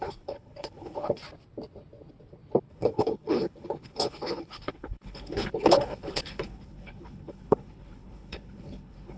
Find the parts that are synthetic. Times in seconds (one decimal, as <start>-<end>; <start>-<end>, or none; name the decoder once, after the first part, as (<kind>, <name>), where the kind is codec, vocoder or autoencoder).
0.0-1.2 (codec, HILCodec); 2.7-9.2